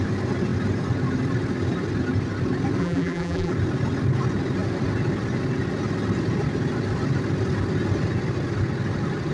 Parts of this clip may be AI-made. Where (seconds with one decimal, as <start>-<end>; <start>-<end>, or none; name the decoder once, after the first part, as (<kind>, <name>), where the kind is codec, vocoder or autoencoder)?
2.8-3.5 (vocoder, BigVGAN v2)